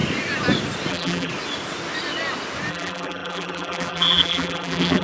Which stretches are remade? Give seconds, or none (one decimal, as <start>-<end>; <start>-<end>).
0.9-1.3; 2.7-5.0